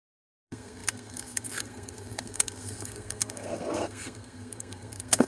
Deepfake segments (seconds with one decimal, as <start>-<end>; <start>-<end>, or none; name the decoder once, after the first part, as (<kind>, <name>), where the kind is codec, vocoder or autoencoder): 0.0-5.3 (codec, SNAC)